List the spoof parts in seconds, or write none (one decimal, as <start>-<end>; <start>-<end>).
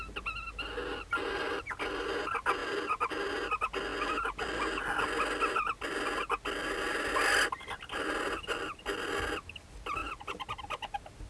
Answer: none